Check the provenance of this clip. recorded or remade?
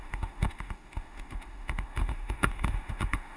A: remade